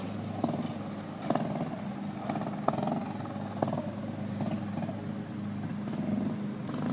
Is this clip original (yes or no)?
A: yes